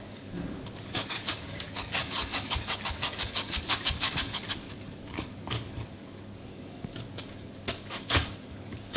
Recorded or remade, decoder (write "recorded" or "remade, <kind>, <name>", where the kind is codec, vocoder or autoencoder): remade, codec, DAC